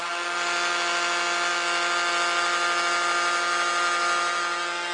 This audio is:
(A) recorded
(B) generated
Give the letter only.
A